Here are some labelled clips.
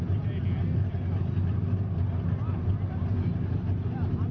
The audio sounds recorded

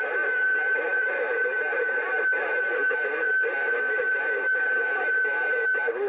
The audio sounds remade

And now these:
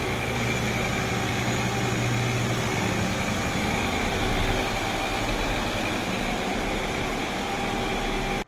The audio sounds recorded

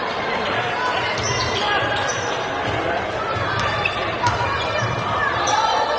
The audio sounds remade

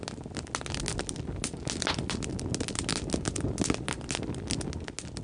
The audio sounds recorded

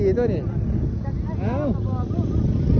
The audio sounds recorded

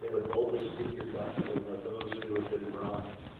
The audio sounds recorded